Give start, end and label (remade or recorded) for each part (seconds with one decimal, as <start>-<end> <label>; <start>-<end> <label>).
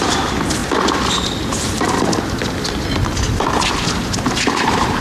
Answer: 0.0-0.6 remade; 0.6-3.6 recorded; 3.6-5.0 remade